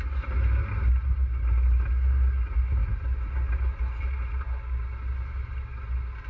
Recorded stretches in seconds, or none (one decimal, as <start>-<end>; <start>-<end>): 0.0-6.3